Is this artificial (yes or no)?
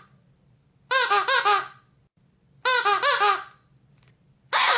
no